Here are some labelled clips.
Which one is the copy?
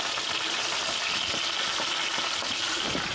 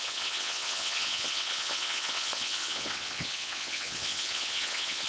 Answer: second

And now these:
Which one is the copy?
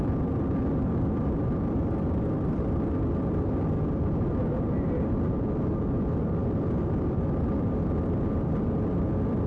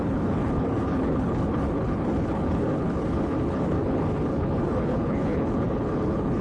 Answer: second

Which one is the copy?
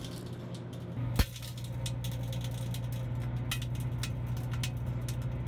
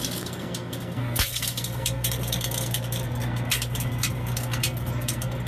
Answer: second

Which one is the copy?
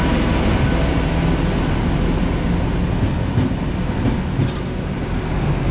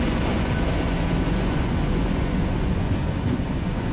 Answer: second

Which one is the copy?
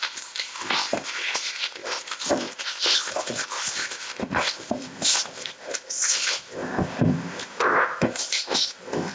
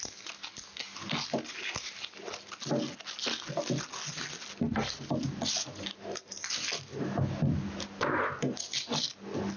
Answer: first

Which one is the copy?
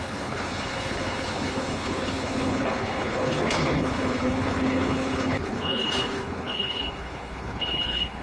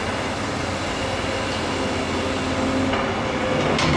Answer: first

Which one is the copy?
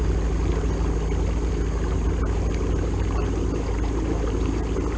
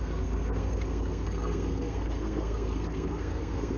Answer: second